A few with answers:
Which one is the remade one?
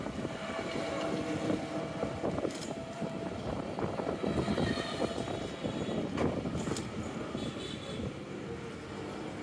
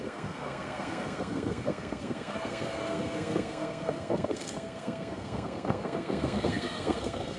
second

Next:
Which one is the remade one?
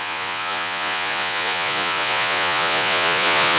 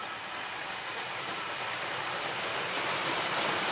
first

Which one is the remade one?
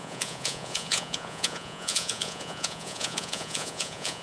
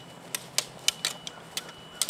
first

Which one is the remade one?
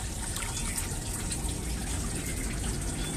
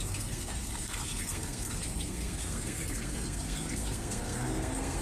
second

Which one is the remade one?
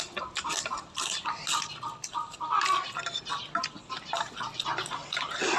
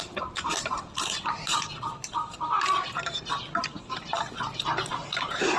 second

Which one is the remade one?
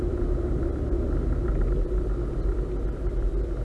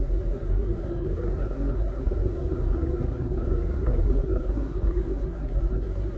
second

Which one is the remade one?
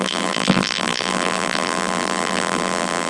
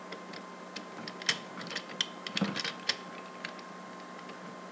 first